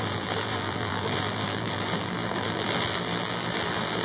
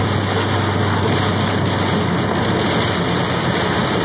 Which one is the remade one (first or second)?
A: first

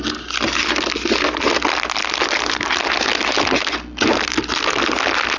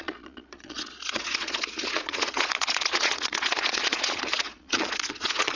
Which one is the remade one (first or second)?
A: second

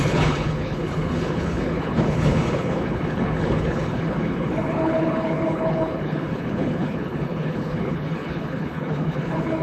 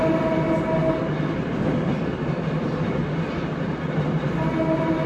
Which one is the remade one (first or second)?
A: first